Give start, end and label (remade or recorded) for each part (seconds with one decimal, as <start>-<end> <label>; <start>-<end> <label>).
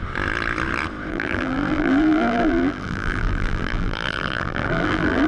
0.0-1.1 recorded; 1.1-5.3 remade